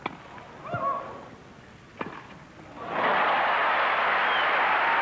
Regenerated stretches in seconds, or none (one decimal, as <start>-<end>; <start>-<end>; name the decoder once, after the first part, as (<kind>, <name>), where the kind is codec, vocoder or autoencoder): none